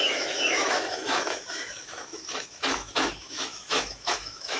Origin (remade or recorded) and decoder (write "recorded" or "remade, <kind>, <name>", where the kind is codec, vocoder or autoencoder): remade, autoencoder, DAC-VAE